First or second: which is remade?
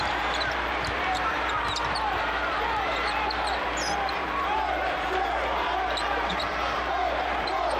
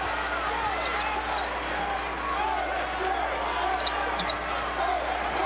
first